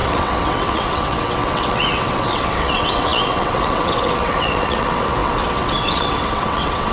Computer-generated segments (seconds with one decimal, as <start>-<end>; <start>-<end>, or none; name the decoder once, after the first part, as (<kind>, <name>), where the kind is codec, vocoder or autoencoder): 0.0-6.9 (vocoder, WaveNeXt)